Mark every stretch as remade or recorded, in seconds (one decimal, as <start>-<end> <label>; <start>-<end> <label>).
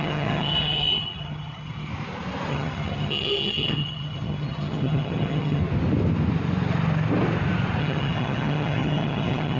0.0-1.9 remade; 1.9-2.5 recorded; 2.5-5.6 remade; 5.6-7.8 recorded; 7.8-9.6 remade